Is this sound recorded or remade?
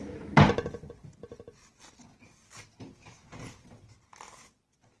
recorded